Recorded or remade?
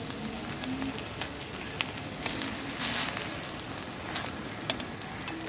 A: recorded